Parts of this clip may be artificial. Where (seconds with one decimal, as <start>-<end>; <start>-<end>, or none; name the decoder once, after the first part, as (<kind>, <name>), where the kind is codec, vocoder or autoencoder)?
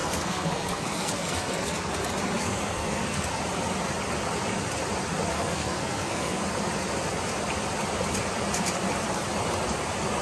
0.0-1.9 (codec, SNAC); 2.4-3.4; 5.3-6.4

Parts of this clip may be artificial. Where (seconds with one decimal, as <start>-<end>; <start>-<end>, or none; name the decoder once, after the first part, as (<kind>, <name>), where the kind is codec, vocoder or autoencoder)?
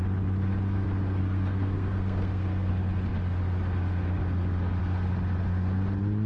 1.2-2.7 (codec, SNAC)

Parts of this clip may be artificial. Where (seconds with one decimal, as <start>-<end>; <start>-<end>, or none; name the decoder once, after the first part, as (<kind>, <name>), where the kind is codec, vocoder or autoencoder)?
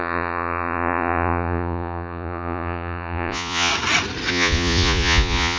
0.0-3.7 (vocoder, Vocos); 4.3-5.6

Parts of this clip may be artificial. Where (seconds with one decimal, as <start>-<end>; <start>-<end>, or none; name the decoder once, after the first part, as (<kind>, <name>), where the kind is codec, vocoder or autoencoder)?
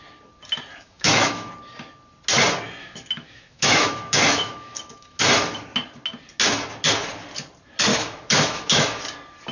0.7-1.5 (autoencoder, DAC-VAE); 2.8-5.2; 7.9-9.0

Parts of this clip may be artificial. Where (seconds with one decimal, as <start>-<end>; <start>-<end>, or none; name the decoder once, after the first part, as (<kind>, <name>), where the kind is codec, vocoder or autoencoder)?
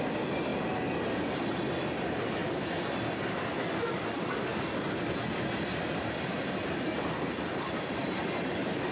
none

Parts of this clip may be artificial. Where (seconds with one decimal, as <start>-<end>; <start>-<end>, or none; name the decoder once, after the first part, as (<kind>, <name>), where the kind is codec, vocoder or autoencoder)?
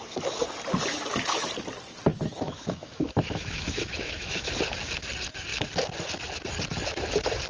0.9-1.5 (autoencoder, DAC-VAE); 2.1-4.5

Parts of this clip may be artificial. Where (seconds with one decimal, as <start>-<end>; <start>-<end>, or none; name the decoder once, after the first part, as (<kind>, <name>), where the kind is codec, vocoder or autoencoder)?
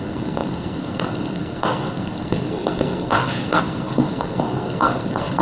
0.0-5.4 (codec, SNAC)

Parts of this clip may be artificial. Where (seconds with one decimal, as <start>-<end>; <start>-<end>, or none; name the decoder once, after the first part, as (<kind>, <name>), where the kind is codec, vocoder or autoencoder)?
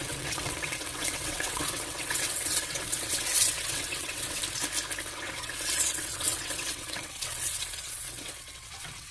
0.0-4.4 (vocoder, WaveNeXt); 5.0-9.1